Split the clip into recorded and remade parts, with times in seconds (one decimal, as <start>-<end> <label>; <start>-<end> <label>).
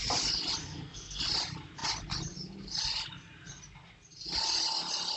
0.0-0.6 recorded; 0.6-1.2 remade; 1.2-5.2 recorded